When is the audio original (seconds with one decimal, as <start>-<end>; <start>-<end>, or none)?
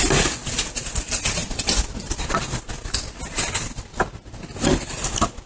0.0-5.5